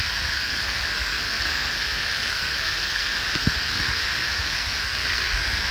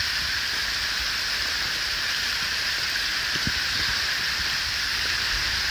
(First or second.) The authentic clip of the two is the second